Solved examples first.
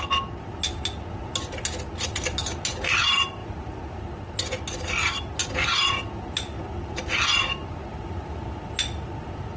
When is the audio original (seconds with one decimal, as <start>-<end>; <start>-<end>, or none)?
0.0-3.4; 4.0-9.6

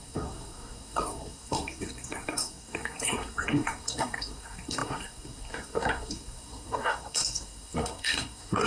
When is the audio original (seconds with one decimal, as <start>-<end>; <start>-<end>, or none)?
none

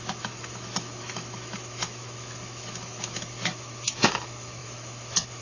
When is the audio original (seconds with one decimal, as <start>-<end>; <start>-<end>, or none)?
none

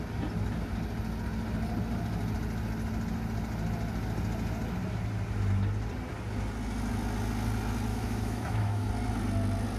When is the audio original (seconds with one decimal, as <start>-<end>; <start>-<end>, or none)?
0.0-7.9; 8.9-9.8